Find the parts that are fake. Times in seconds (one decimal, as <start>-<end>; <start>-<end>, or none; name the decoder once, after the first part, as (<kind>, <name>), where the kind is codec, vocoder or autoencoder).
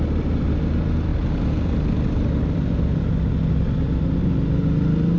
none